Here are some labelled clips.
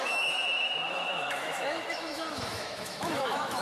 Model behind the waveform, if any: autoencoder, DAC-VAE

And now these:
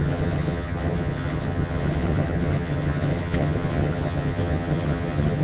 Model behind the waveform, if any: vocoder, HiFi-GAN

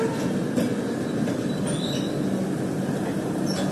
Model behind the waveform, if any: none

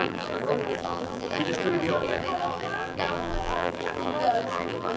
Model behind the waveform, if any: vocoder, BigVGAN v2